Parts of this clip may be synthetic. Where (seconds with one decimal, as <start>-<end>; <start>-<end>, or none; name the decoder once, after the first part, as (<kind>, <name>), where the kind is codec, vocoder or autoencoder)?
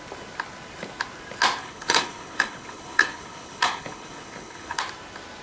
1.6-4.8 (codec, HILCodec)